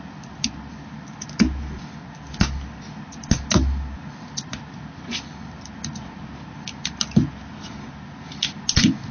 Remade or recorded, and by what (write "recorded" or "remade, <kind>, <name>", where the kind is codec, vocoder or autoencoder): recorded